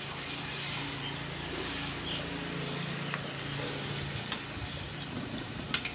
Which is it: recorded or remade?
recorded